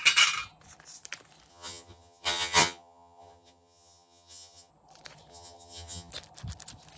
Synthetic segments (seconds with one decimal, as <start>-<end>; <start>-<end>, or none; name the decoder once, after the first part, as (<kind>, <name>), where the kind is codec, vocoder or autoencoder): 1.5-4.7 (vocoder, HiFi-GAN); 5.3-6.1